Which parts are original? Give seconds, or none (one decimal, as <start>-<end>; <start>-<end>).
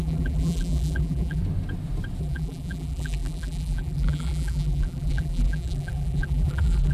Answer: 1.4-2.2